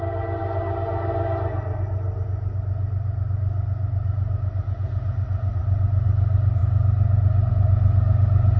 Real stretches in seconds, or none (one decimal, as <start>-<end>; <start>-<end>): 0.0-8.6